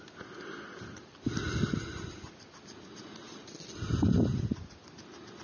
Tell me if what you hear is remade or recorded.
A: recorded